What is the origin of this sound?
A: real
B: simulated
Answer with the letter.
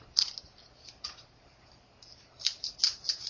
B